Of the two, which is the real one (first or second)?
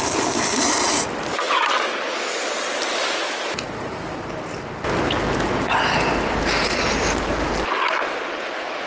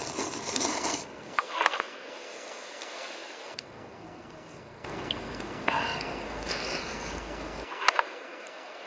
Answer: first